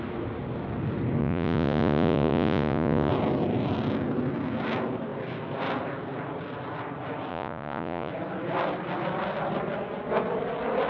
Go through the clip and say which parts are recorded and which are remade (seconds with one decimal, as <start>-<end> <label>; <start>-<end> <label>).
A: 0.0-1.2 recorded; 1.2-3.1 remade; 3.1-7.3 recorded; 7.3-8.1 remade; 8.1-10.9 recorded